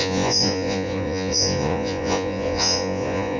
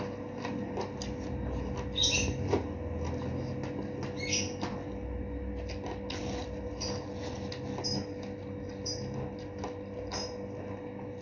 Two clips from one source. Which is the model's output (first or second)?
first